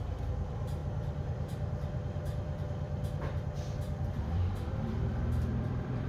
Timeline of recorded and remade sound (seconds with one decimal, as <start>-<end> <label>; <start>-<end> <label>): 0.0-6.1 remade